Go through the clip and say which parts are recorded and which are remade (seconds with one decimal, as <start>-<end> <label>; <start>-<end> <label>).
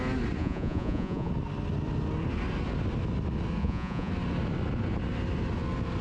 0.0-0.4 recorded; 0.4-1.3 remade; 1.3-3.6 recorded; 3.6-4.1 remade; 4.1-6.0 recorded